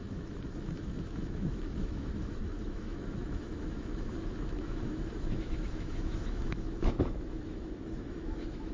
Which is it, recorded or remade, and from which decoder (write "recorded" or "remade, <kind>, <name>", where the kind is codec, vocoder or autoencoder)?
remade, autoencoder, DAC-VAE